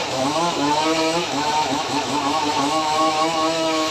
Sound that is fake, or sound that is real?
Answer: fake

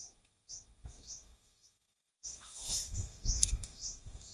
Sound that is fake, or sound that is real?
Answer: fake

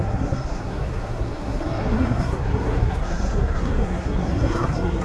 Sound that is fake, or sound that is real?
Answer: fake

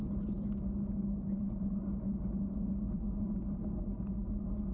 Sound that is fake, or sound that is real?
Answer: real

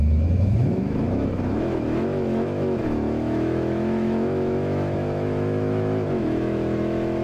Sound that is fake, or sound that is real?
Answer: fake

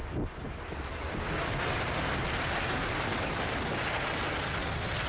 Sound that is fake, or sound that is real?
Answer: real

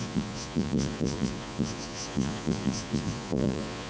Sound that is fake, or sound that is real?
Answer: fake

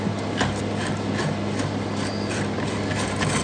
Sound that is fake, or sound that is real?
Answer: real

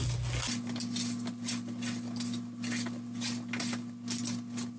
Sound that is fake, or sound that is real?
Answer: real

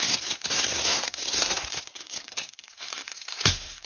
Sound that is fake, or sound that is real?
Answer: fake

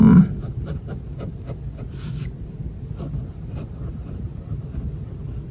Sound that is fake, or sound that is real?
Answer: real